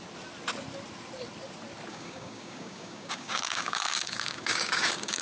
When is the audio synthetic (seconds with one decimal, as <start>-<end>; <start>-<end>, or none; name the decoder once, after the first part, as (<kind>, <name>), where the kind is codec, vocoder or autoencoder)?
1.9-5.2 (codec, DAC)